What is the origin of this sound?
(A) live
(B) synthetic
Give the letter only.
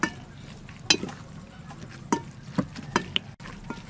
A